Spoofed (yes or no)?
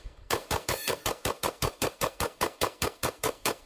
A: yes